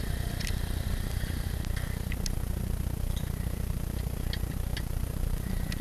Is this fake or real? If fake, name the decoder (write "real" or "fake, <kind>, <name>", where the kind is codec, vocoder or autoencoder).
real